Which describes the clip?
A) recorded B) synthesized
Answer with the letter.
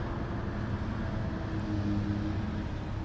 A